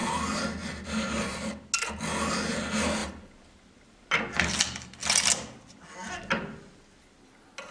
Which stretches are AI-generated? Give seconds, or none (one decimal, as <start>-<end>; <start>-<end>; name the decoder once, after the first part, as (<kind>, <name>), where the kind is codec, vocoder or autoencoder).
none